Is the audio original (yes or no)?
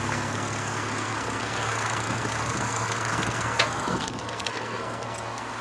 no